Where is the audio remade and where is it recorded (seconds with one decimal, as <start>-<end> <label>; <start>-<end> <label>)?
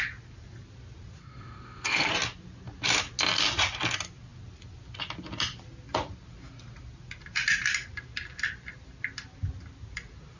0.0-1.2 recorded; 1.2-2.1 remade; 2.1-10.4 recorded